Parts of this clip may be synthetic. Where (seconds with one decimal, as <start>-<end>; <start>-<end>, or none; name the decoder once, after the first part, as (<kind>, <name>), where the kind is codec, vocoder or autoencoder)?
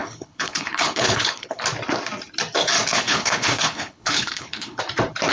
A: 0.0-1.6 (codec, HILCodec); 2.9-4.8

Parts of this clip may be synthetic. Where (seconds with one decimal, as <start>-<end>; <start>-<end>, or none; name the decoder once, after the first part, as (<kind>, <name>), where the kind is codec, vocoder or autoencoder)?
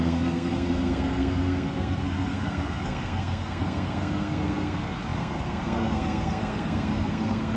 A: 0.0-7.6 (codec, SNAC)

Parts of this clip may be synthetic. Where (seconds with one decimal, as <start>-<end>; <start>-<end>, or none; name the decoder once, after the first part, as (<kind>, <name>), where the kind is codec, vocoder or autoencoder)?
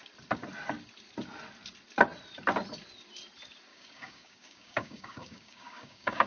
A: 3.7-6.3 (codec, DAC)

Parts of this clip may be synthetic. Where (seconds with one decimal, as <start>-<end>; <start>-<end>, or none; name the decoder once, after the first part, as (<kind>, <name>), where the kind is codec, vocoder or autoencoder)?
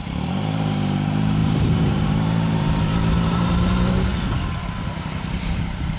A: 0.0-4.1 (vocoder, BigVGAN v2); 4.8-6.0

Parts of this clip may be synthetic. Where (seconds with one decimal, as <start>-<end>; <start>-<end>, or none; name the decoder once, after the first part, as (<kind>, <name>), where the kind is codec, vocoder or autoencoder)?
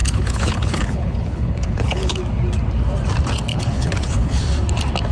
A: 0.0-2.2 (codec, HILCodec); 3.5-4.4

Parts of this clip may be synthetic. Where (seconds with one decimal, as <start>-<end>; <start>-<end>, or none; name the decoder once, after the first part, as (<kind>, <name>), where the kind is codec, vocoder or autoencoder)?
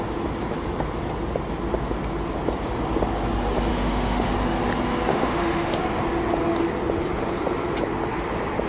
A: 3.7-4.3 (autoencoder, DAC-VAE); 5.1-5.8